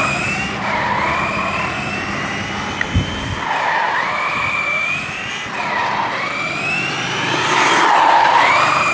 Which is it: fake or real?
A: real